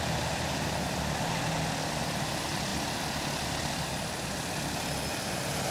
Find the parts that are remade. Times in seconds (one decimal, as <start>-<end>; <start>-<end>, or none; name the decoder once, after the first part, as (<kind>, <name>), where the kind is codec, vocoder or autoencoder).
none

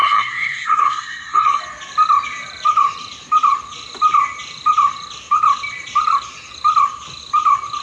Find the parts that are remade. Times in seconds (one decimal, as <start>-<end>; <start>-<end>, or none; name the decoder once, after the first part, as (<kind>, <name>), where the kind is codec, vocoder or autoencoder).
0.0-1.6 (codec, SNAC)

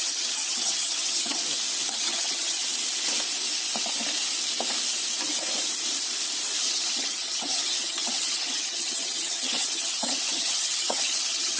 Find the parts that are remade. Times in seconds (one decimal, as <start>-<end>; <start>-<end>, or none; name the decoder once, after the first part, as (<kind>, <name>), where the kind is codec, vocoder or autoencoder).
0.0-1.4 (vocoder, HiFi-GAN); 1.9-2.6; 6.6-11.6

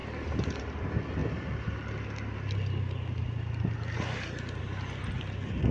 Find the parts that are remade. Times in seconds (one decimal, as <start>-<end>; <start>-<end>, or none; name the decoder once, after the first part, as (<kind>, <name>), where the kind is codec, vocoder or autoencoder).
none

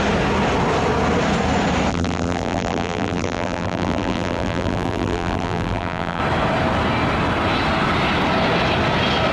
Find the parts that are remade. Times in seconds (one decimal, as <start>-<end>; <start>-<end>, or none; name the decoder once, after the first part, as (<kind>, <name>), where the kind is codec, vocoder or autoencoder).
1.9-6.2 (vocoder, BigVGAN v2)

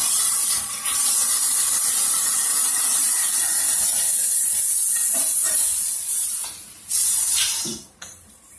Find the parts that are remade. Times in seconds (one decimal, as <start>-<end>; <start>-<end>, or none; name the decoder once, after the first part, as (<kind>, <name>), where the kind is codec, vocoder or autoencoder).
0.0-1.2 (vocoder, BigVGAN v2); 2.1-8.6

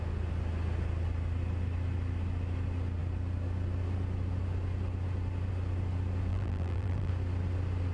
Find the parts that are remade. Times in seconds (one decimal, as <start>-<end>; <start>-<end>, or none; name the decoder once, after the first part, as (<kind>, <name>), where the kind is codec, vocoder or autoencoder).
6.3-7.1 (vocoder, BigVGAN v2)